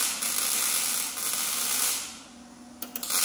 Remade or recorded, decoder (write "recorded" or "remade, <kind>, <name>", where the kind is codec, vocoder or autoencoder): recorded